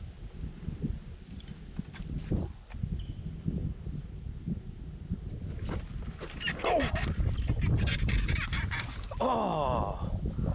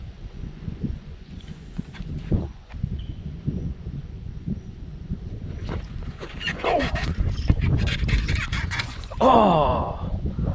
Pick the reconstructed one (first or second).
second